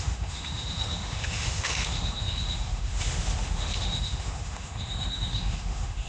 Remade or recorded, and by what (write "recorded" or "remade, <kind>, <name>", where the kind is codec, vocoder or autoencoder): remade, autoencoder, DAC-VAE